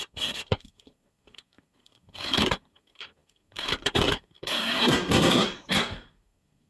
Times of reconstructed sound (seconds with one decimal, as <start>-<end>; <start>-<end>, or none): 0.0-6.7